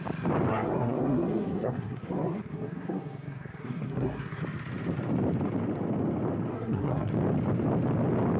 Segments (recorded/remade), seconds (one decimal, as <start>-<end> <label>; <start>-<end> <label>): 0.0-0.5 recorded; 0.5-4.4 remade; 4.4-6.5 recorded; 6.5-7.1 remade; 7.1-8.4 recorded